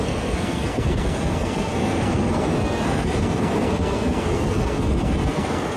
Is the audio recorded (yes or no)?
no